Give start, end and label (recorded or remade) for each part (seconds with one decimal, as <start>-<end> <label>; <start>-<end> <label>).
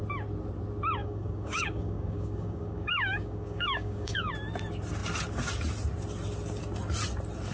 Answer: 0.0-1.0 recorded; 1.0-4.3 remade; 4.3-7.5 recorded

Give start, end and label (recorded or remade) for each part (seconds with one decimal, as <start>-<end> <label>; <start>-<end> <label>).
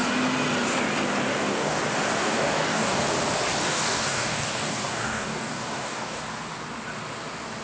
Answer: 0.0-1.3 recorded; 1.3-1.8 remade; 1.8-2.2 recorded; 2.2-3.0 remade; 3.0-3.6 recorded; 3.6-6.2 remade; 6.2-7.6 recorded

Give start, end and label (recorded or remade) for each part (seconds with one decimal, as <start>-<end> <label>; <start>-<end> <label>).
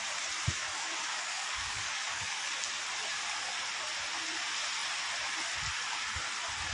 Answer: 0.0-0.7 recorded; 0.7-2.5 remade; 2.5-6.7 recorded